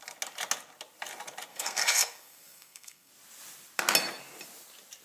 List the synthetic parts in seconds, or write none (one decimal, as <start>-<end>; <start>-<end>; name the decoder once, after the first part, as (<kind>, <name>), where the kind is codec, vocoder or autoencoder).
1.5-3.1 (codec, SNAC)